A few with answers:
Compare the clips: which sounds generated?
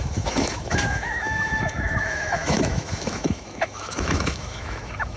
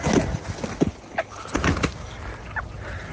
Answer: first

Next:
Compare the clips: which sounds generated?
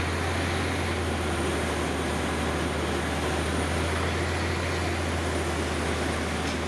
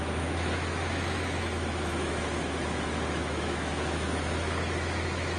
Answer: second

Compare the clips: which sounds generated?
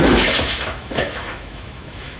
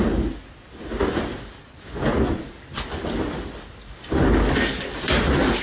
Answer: first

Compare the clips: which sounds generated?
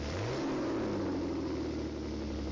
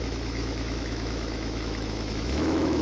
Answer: second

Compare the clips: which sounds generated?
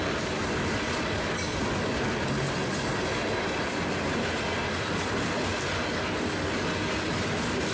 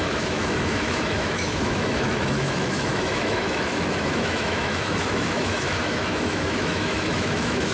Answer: second